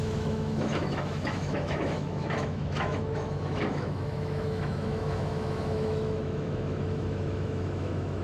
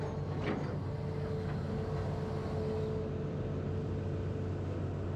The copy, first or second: first